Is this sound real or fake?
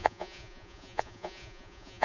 fake